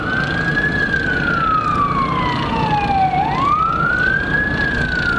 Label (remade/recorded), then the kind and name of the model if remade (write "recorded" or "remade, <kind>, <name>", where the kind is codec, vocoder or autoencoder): recorded